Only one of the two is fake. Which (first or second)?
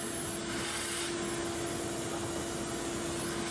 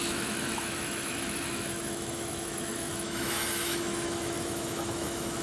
second